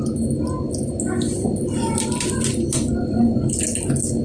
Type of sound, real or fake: real